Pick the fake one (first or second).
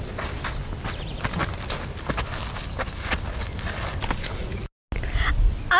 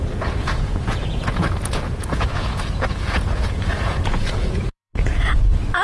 second